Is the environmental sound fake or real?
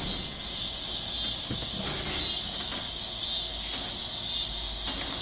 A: real